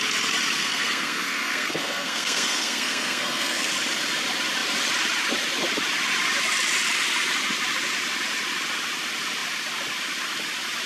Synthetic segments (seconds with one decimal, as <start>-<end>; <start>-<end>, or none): 0.6-3.7